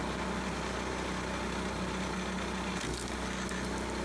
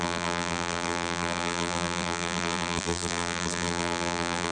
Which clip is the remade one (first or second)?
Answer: second